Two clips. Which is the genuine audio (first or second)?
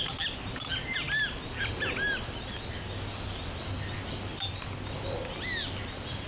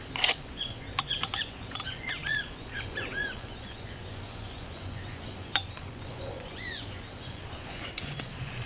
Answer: first